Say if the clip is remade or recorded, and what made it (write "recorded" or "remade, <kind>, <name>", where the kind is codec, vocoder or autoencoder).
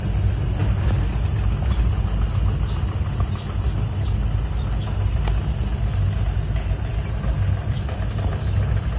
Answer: recorded